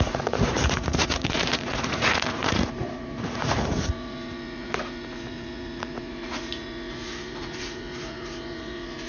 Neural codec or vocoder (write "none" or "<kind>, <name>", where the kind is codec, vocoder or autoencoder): vocoder, Vocos